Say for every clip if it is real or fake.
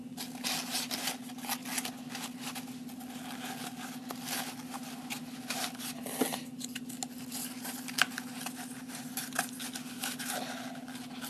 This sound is real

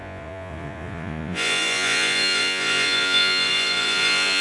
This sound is fake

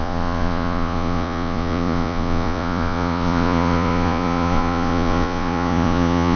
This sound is fake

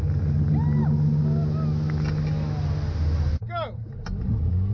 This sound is real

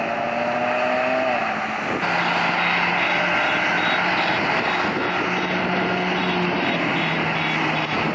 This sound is real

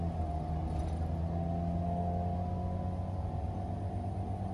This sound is real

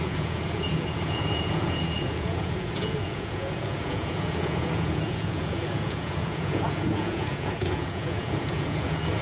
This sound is fake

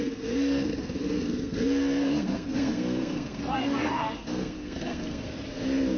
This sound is fake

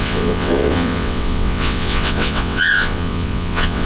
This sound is fake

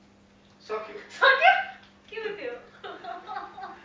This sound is real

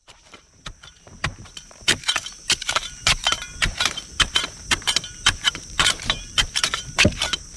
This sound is fake